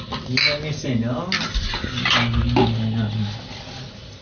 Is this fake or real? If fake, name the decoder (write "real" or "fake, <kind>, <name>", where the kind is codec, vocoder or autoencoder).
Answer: real